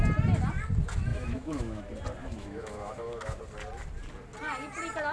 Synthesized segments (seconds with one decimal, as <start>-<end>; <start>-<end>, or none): 1.1-1.8; 2.2-3.4